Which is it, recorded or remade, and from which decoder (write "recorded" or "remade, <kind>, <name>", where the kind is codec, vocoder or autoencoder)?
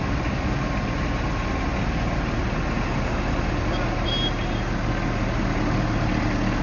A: recorded